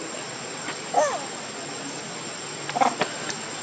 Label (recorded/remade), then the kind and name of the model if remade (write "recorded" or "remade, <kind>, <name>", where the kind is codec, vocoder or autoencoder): recorded